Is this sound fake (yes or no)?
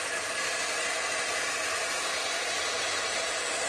no